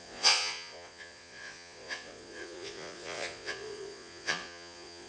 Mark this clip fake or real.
fake